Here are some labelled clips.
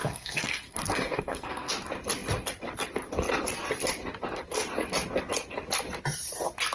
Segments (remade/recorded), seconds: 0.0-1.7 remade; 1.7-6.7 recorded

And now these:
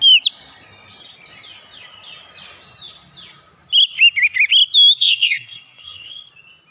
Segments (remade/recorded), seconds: 0.0-5.0 recorded; 5.0-6.3 remade; 6.3-6.7 recorded

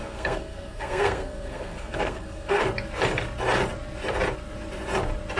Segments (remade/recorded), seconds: 0.0-2.6 remade; 2.6-5.4 recorded

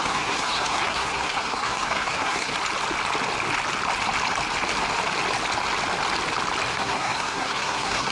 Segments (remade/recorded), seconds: 0.0-2.5 remade; 2.5-6.7 recorded; 6.7-8.1 remade

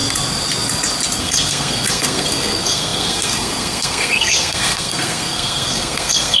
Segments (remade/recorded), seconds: 0.0-1.2 recorded; 1.2-6.4 remade

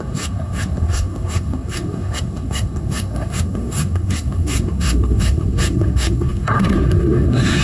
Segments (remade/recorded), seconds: 0.0-7.6 remade